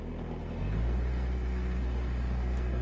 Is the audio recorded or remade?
remade